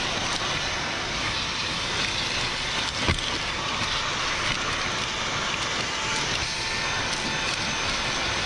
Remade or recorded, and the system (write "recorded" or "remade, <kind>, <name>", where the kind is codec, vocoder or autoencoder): recorded